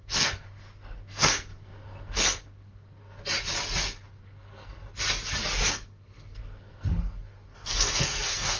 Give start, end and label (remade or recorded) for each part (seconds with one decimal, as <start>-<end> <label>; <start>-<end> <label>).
0.0-3.0 remade; 3.0-4.2 recorded; 4.2-4.8 remade; 4.8-5.7 recorded; 5.7-8.6 remade